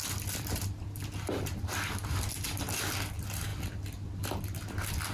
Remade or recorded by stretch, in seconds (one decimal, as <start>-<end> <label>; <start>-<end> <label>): 0.0-5.1 recorded